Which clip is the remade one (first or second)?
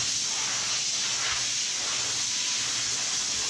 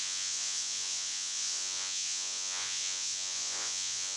second